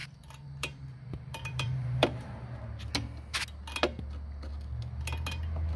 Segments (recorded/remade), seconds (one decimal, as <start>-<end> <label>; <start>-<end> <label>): 0.0-2.6 remade; 2.6-5.8 recorded